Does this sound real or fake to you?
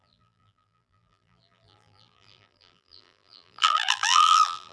fake